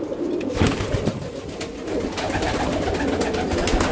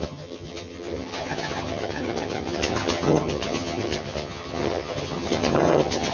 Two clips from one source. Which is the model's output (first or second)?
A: second